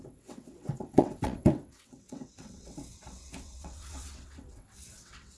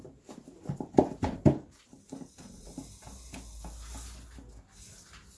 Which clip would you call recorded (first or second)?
second